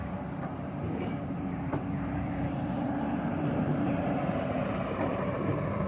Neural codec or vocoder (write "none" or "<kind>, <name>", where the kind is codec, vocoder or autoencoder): vocoder, BigVGAN v2